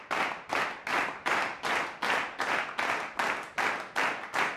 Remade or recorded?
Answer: recorded